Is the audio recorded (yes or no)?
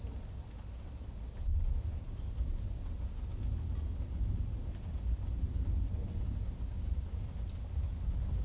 yes